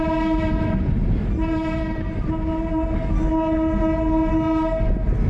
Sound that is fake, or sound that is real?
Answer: real